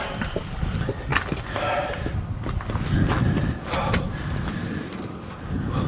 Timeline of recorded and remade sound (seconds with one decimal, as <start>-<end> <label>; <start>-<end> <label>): 0.0-5.9 recorded